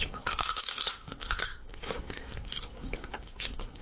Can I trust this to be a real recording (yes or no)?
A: no